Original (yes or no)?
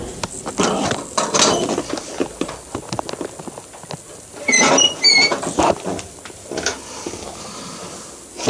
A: yes